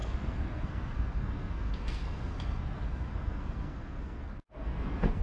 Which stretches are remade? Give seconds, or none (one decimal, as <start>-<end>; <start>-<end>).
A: 0.0-5.2